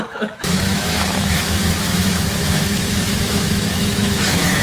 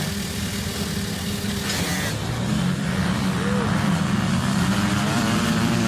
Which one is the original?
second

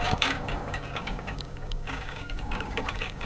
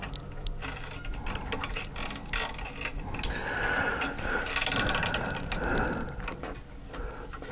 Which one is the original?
second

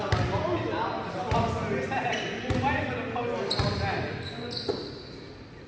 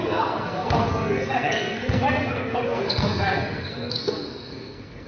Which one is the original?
first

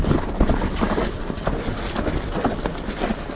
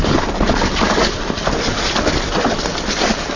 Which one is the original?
first